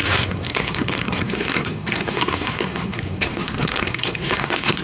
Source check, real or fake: fake